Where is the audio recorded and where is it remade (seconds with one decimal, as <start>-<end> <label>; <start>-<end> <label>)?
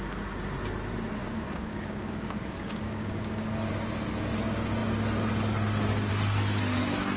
0.0-1.2 recorded; 1.2-3.7 remade; 3.7-7.2 recorded